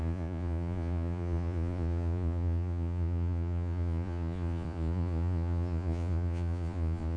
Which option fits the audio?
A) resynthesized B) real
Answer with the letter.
A